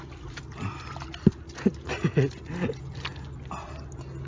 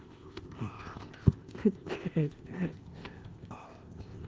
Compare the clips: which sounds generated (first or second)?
second